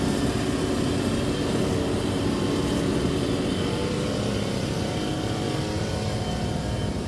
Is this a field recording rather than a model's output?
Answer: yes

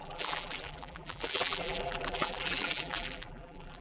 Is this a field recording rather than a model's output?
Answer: no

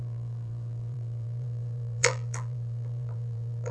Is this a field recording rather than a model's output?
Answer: no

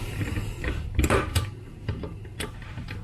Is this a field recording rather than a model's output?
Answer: no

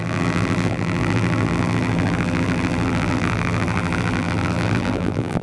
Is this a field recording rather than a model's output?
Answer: no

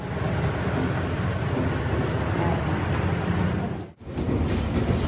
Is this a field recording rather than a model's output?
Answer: yes